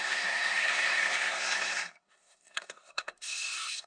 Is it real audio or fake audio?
fake